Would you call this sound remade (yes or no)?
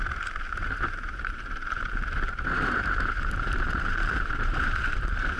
yes